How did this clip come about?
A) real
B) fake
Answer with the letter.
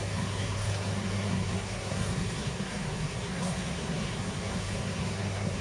B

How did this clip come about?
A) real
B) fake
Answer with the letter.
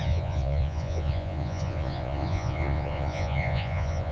B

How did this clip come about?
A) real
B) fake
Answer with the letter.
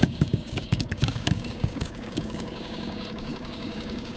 B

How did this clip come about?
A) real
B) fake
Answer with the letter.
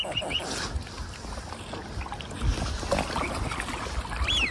A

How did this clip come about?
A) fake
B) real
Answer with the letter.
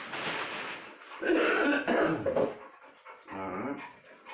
B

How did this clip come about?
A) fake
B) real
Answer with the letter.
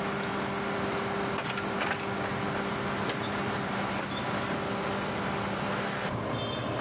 B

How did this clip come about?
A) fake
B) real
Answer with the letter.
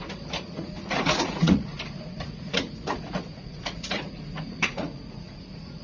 A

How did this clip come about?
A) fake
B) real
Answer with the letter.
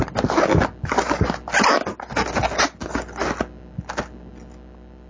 B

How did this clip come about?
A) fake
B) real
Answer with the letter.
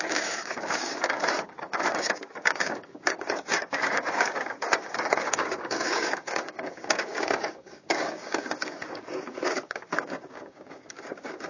A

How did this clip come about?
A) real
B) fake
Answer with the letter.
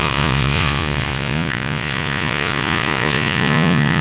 B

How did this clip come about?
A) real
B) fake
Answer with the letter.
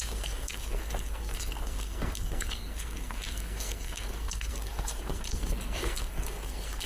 B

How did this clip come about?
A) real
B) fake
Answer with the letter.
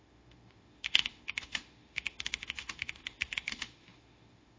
B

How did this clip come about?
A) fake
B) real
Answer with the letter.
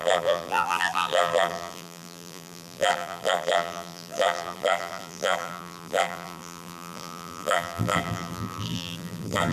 A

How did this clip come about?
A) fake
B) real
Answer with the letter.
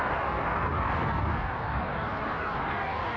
A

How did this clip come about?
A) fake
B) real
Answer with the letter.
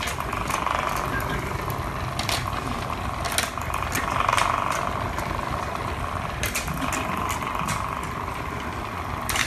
B